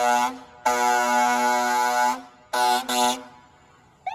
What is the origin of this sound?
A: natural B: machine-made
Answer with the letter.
A